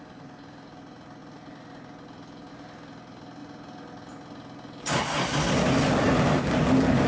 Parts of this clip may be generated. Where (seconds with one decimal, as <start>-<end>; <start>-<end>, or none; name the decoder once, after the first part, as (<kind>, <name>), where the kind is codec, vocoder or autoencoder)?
none